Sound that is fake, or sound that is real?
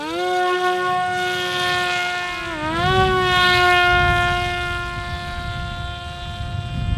real